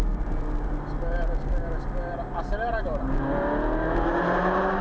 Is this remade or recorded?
recorded